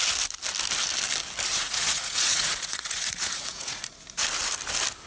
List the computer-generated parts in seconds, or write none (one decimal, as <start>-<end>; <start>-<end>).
1.5-4.0